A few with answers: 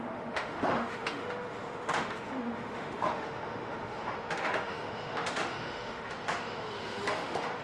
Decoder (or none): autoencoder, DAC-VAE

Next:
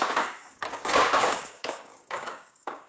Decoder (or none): codec, DAC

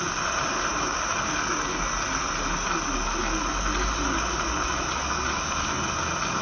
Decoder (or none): none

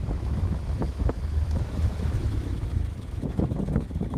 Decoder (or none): autoencoder, DAC-VAE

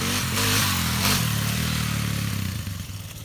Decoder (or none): none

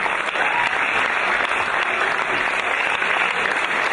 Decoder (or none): none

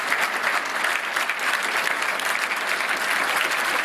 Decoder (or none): none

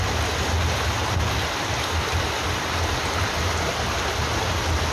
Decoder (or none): none